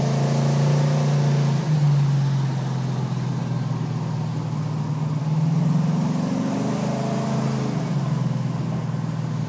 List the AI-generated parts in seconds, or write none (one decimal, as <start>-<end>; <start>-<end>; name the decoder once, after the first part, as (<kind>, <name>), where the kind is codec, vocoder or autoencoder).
none